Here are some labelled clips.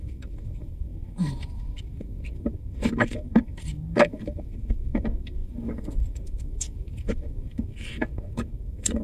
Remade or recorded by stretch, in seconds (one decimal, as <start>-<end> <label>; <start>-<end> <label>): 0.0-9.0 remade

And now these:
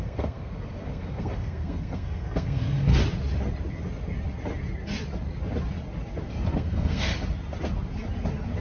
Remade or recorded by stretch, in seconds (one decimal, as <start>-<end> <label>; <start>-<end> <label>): 0.0-2.9 remade; 2.9-6.3 recorded; 6.3-7.1 remade; 7.1-8.6 recorded

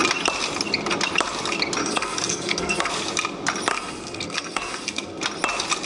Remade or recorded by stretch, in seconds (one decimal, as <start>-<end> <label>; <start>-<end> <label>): 0.0-1.8 recorded; 1.8-2.9 remade; 2.9-3.7 recorded; 3.7-5.2 remade; 5.2-5.9 recorded